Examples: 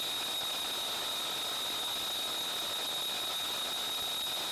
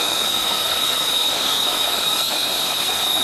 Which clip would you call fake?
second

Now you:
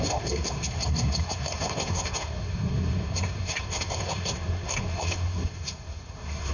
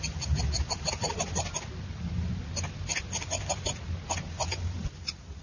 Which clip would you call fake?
first